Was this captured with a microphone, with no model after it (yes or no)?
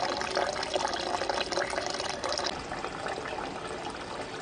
yes